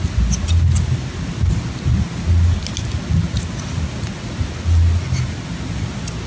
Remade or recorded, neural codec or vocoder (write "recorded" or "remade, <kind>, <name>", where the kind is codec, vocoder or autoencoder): recorded